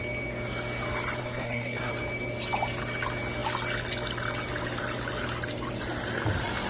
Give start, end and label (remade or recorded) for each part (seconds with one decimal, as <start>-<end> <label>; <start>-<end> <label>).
0.0-1.2 recorded; 1.2-1.9 remade; 1.9-6.7 recorded